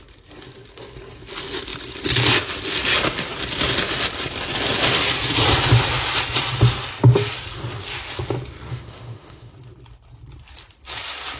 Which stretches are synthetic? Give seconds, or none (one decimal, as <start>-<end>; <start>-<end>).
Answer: 8.7-9.5